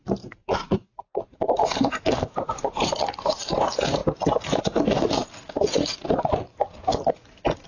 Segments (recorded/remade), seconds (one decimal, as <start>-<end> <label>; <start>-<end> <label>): 0.0-4.0 remade; 4.0-7.7 recorded